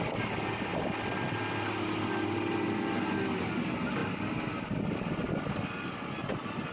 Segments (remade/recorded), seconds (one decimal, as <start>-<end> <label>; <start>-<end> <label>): 0.0-6.7 recorded